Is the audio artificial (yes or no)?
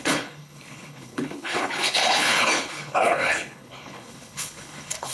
yes